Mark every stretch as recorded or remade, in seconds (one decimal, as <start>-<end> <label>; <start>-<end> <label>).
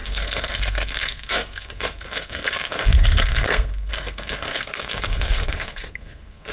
0.0-6.5 remade